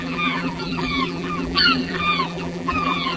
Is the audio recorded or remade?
remade